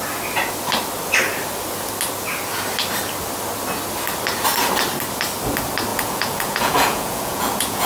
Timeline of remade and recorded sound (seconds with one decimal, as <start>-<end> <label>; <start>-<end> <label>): 0.0-5.9 recorded; 5.9-7.9 remade